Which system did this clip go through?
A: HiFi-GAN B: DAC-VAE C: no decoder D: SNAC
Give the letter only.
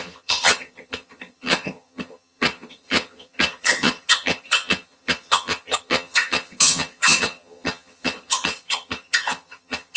A